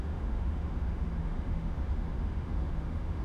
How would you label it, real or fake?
fake